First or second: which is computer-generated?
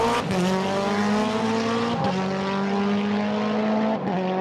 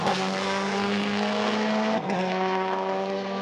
second